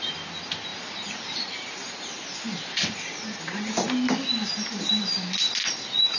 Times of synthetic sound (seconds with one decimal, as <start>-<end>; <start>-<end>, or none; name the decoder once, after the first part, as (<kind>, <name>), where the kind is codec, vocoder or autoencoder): 0.7-3.1 (vocoder, BigVGAN v2)